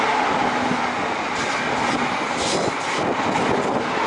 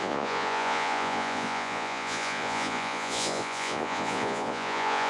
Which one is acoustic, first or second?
first